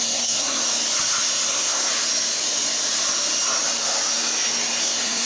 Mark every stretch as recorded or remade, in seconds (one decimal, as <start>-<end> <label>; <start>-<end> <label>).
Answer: 0.0-0.6 remade; 0.6-1.5 recorded; 1.5-1.9 remade; 1.9-4.8 recorded; 4.8-5.3 remade